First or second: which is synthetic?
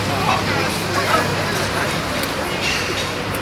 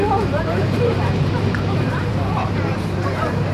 second